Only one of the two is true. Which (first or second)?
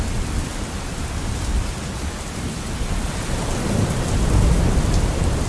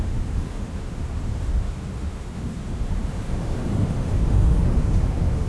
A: first